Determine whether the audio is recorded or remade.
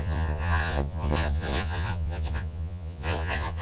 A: remade